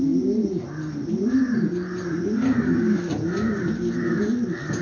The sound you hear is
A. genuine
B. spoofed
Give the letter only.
A